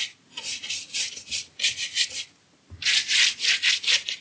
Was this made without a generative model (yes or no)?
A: yes